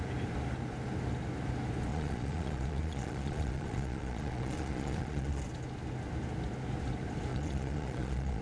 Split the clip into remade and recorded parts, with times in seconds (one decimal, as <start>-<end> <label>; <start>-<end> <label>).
0.0-1.9 recorded; 1.9-5.4 remade; 5.4-7.3 recorded; 7.3-8.4 remade